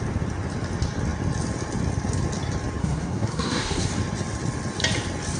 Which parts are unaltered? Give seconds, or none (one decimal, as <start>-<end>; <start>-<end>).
0.0-2.8; 3.9-5.4

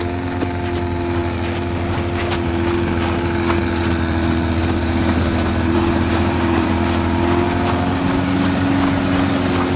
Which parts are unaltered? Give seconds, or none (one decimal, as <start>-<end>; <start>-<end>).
0.0-4.6; 6.7-9.8